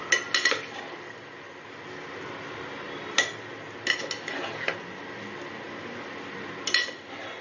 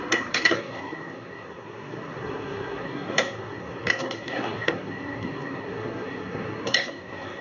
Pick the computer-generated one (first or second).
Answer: second